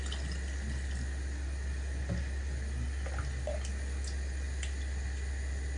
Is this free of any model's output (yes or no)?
yes